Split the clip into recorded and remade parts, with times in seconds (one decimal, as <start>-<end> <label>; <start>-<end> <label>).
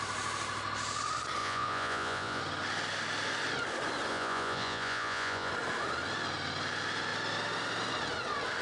0.0-1.4 recorded; 1.4-2.4 remade; 2.4-4.1 recorded; 4.1-5.5 remade; 5.5-8.6 recorded